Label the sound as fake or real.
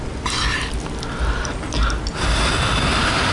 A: real